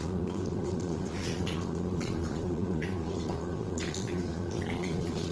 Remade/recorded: remade